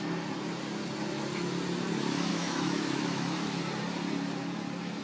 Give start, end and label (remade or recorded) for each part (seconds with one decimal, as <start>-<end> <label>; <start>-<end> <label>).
0.0-2.3 recorded; 2.3-3.6 remade; 3.6-5.0 recorded